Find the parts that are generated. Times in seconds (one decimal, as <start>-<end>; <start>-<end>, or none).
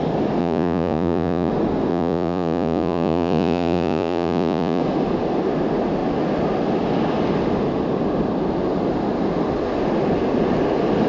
0.4-1.5; 1.9-4.8